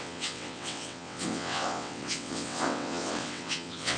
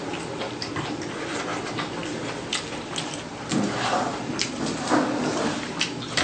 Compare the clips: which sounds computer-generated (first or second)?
first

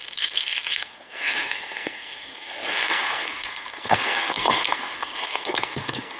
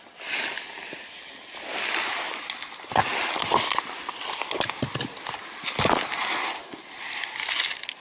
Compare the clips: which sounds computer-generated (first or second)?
first